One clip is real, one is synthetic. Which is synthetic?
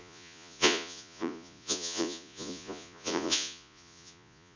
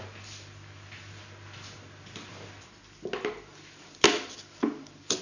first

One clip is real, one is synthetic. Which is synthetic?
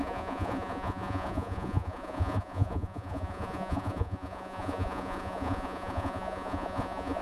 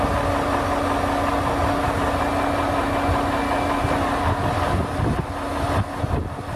first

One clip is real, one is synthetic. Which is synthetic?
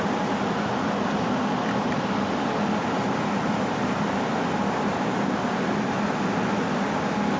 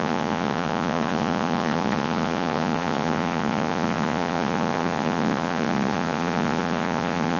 second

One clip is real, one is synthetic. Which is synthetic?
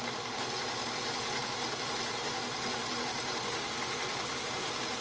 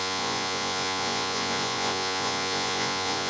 second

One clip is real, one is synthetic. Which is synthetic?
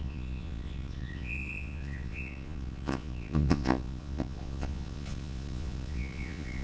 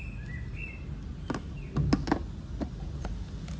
first